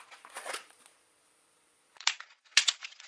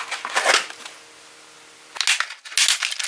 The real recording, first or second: second